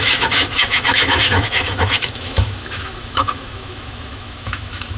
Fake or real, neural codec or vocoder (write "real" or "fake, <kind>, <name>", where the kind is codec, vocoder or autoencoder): fake, autoencoder, DAC-VAE